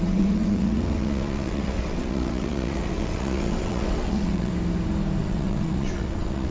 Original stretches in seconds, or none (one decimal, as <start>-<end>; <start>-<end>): 4.5-5.2